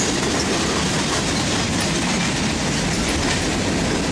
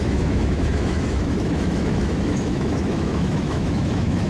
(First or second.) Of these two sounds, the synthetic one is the second